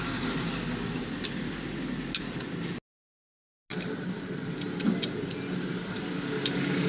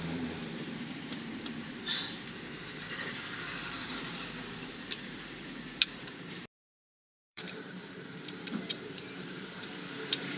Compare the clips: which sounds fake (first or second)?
second